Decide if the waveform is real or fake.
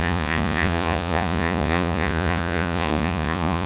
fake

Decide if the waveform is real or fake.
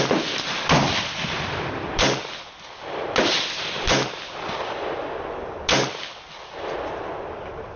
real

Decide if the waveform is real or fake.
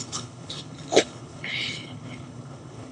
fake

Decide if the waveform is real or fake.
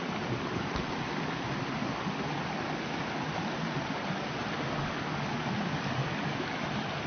real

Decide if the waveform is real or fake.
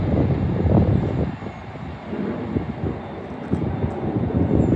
real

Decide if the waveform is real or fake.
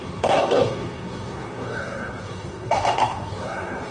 fake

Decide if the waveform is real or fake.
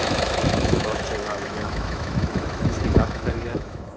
fake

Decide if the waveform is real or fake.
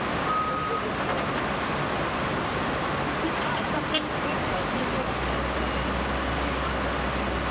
real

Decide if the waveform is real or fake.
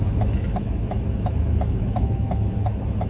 fake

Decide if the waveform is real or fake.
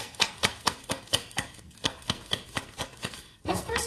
fake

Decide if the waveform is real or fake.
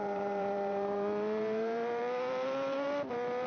fake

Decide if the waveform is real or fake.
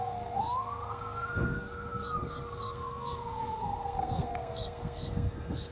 fake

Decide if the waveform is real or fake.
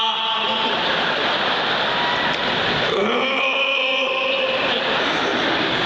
real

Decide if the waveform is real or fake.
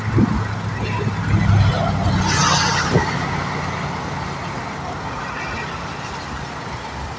real